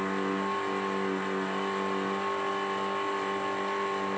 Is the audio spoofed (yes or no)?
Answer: no